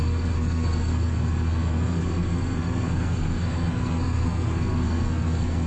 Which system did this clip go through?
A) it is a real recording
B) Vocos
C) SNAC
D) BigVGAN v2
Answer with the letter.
C